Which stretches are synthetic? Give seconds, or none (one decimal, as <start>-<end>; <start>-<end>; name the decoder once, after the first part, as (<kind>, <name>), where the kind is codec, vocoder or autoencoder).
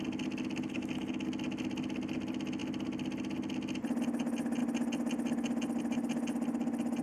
none